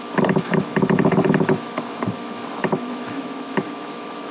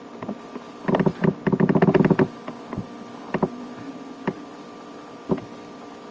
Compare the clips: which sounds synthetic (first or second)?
first